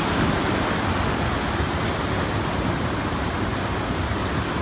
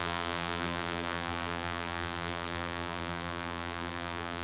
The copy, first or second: second